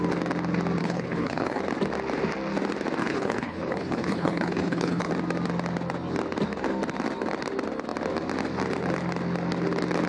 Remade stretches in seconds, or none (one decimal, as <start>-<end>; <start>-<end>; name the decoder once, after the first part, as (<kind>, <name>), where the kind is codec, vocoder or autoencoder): 0.8-1.6 (codec, HILCodec); 3.0-5.1